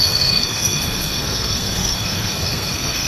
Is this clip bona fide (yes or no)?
no